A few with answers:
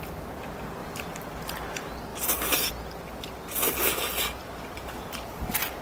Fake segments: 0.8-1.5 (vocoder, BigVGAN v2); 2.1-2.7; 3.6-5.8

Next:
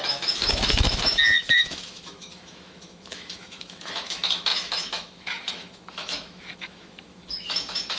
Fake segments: 0.0-8.0 (autoencoder, DAC-VAE)

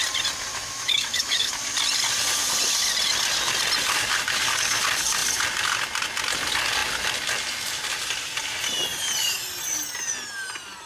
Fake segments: 0.5-1.6 (autoencoder, DAC-VAE)

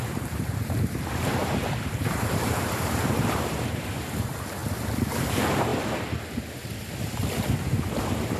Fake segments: 0.0-5.7 (vocoder, BigVGAN v2); 8.0-8.4

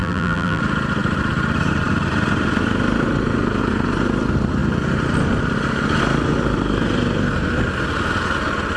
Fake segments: 0.0-0.6 (vocoder, BigVGAN v2)